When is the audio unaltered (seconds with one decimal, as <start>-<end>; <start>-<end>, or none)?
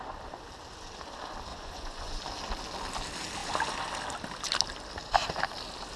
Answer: 0.0-1.5; 2.2-6.0